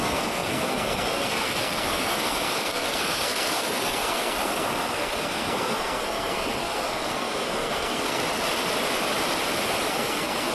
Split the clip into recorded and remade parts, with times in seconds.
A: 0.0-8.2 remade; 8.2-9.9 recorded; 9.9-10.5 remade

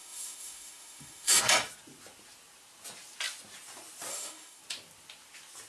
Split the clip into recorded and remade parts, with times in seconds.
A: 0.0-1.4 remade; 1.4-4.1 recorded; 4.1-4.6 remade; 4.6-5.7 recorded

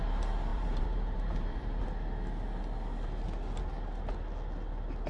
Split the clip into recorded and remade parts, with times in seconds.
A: 0.0-0.5 recorded; 0.5-1.8 remade; 1.8-5.1 recorded